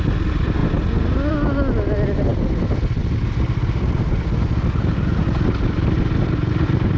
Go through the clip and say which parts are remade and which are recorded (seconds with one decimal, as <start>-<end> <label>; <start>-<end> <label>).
0.0-7.0 recorded